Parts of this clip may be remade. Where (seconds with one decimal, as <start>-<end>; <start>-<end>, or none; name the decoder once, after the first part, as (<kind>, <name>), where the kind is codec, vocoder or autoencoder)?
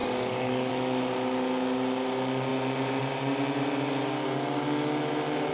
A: 0.0-0.7 (codec, DAC)